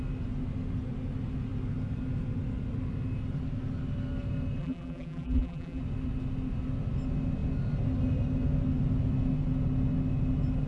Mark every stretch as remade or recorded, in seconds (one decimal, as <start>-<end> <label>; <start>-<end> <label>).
0.0-4.6 recorded; 4.6-5.8 remade; 5.8-10.7 recorded